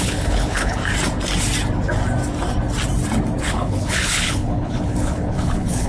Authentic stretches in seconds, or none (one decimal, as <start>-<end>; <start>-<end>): 0.8-3.4